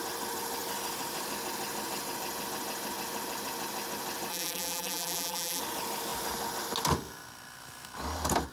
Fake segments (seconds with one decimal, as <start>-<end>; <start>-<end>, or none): 4.3-5.6